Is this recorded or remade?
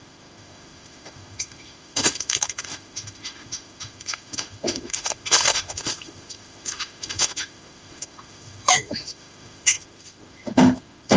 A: remade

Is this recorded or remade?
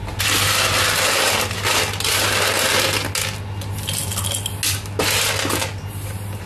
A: recorded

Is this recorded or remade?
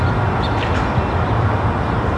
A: recorded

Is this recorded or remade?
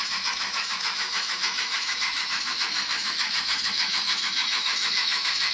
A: remade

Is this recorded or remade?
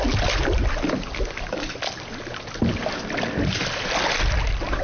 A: recorded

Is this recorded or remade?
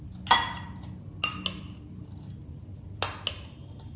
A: recorded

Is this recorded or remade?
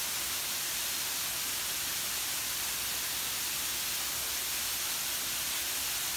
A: recorded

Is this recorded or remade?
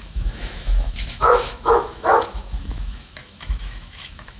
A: remade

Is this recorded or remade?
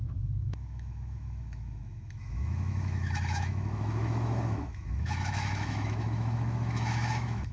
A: remade